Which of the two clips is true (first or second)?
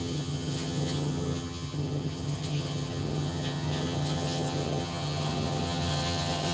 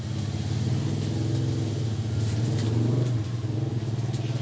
second